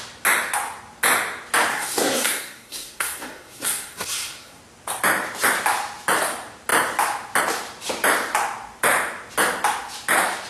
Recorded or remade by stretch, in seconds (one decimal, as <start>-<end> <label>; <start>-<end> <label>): 0.0-1.7 recorded; 1.7-4.6 remade; 4.6-10.5 recorded